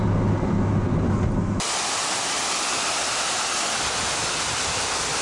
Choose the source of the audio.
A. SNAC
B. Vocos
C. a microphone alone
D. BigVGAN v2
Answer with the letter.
C